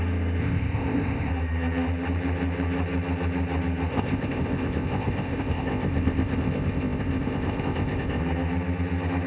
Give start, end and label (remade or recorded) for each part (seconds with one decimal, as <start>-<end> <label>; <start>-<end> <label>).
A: 0.0-0.4 recorded; 0.4-1.3 remade; 1.3-3.9 recorded; 3.9-8.2 remade; 8.2-9.3 recorded